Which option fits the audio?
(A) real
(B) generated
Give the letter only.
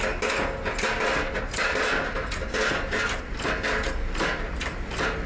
A